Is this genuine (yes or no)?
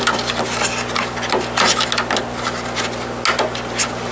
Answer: yes